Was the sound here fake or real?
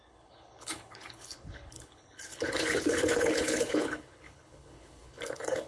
fake